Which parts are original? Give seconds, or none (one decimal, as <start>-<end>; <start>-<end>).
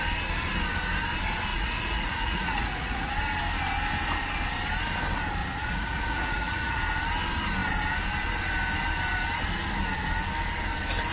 0.0-1.5; 3.1-5.4; 6.8-11.1